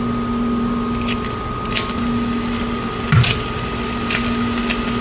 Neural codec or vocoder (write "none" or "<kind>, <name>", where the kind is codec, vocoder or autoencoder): none